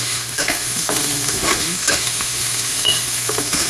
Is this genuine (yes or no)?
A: no